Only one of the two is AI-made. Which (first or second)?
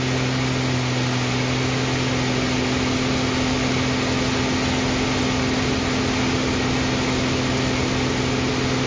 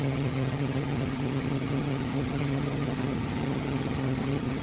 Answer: second